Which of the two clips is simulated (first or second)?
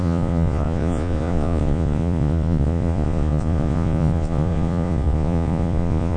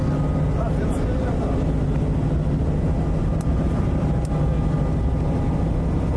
first